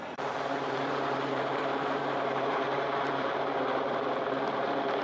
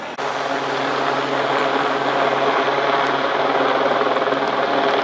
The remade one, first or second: first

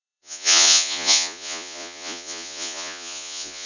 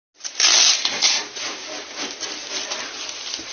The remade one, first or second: first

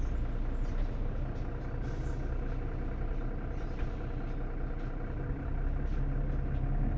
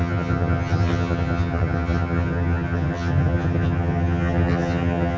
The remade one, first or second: second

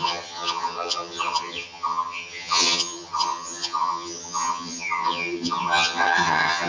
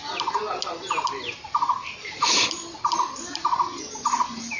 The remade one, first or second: first